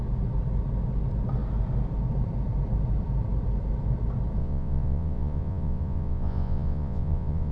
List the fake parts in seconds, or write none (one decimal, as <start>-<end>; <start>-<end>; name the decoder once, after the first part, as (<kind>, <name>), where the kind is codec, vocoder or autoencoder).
4.4-7.5 (vocoder, Vocos)